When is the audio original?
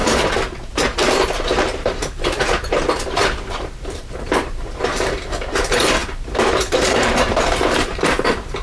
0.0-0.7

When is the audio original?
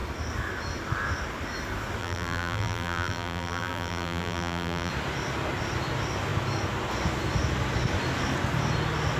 0.0-2.0; 4.9-9.2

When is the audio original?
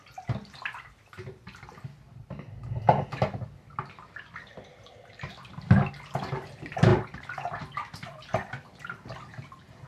0.0-0.4; 2.8-4.5; 5.5-9.9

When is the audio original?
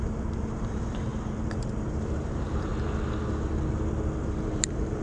1.1-1.9; 2.7-4.2